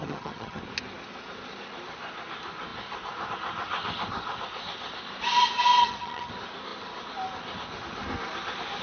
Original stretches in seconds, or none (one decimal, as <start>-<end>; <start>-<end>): 0.6-5.8; 6.3-8.8